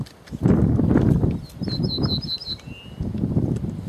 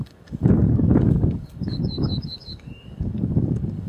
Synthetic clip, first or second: second